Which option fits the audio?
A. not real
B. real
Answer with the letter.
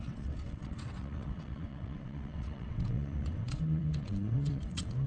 A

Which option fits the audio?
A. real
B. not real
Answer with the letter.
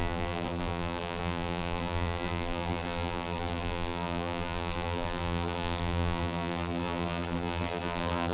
B